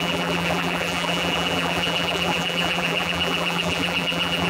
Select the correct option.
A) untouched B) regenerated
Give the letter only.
B